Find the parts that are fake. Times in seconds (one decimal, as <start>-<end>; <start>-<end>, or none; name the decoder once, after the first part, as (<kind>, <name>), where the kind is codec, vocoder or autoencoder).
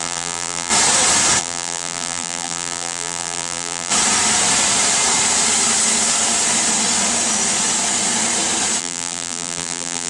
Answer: 0.0-0.7 (vocoder, BigVGAN v2); 1.4-3.9; 8.8-10.1